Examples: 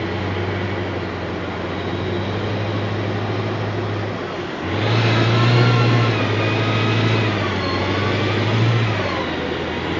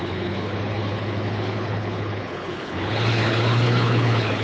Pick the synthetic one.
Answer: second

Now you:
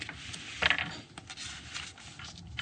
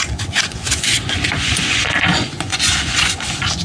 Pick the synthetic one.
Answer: second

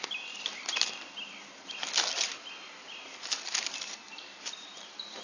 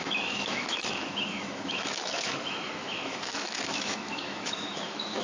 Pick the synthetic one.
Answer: second